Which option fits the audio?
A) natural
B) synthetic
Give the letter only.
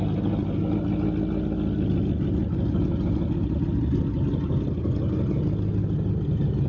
A